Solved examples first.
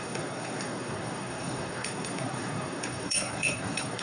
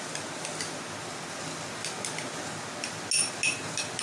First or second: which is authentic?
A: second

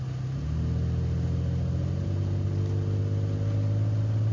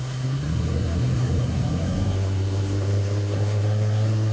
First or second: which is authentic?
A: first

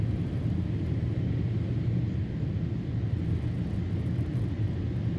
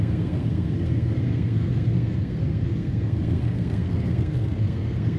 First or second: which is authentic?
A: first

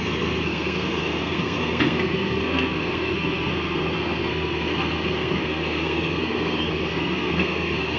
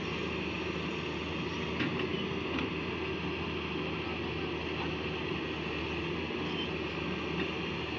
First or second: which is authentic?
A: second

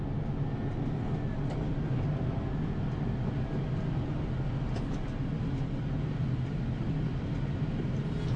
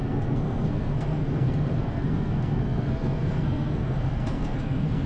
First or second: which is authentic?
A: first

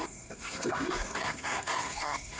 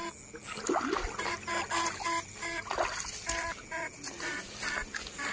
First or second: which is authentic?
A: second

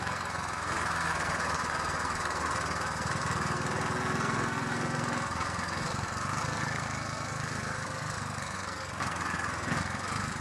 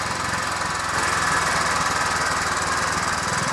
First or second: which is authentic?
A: second